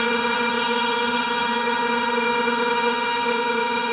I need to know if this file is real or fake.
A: fake